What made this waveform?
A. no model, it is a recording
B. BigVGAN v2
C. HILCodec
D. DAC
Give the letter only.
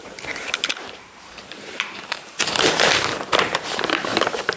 B